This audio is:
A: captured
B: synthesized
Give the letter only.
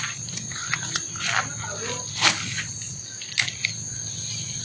A